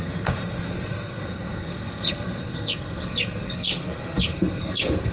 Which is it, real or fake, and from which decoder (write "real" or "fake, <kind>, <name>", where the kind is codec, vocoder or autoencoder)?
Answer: fake, codec, SNAC